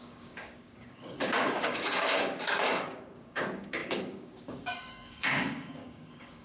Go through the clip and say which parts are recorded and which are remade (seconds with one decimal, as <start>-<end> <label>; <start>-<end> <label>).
0.0-6.4 remade